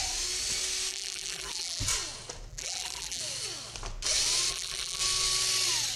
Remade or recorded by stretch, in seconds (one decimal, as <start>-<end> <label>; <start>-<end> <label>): 0.0-0.9 recorded; 0.9-1.8 remade; 1.8-2.5 recorded; 2.5-3.2 remade; 3.2-4.5 recorded; 4.5-5.0 remade; 5.0-6.0 recorded